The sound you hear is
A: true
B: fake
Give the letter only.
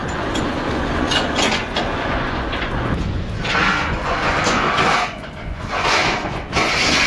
B